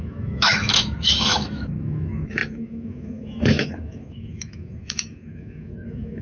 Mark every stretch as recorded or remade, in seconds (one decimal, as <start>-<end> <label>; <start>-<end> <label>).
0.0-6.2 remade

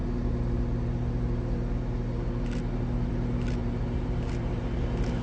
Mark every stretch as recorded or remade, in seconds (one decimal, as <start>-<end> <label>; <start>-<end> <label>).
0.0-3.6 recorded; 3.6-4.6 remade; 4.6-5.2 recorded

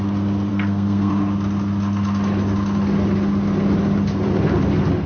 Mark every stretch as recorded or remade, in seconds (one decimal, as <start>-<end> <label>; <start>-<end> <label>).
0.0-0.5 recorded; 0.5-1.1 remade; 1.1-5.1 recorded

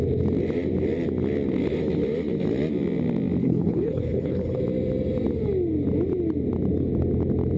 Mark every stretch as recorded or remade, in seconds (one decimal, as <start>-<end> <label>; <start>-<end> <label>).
0.0-3.4 recorded; 3.4-4.6 remade; 4.6-7.6 recorded

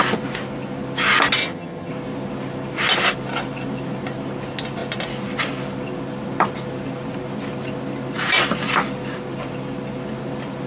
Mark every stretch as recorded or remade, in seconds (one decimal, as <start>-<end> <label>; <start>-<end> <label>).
0.0-1.4 recorded; 1.4-1.9 remade; 1.9-10.7 recorded

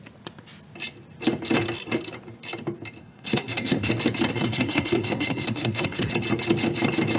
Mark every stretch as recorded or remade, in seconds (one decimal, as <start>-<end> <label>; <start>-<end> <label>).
0.0-3.0 recorded; 3.0-3.9 remade; 3.9-4.3 recorded; 4.3-6.1 remade; 6.1-7.2 recorded